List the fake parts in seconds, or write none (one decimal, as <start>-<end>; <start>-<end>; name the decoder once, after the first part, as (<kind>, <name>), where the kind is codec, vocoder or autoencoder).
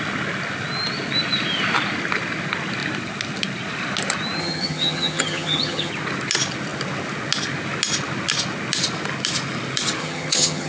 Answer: 4.4-5.9 (vocoder, HiFi-GAN); 10.0-10.7